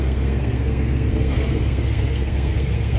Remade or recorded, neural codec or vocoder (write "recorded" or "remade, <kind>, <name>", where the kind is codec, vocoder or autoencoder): remade, codec, SNAC